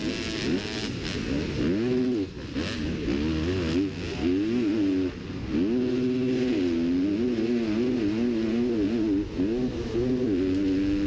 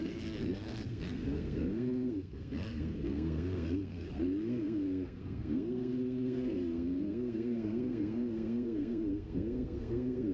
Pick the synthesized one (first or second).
second